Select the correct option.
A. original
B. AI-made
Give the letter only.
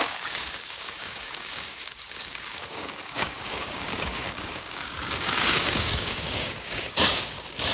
B